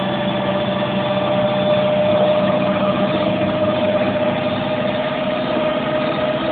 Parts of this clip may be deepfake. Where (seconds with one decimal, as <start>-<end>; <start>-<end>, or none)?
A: 2.1-4.3